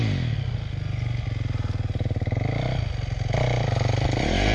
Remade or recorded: recorded